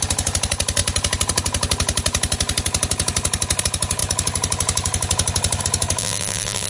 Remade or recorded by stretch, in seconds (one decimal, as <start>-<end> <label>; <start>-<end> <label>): 0.0-6.0 recorded; 6.0-6.7 remade